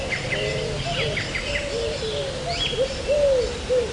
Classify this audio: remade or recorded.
recorded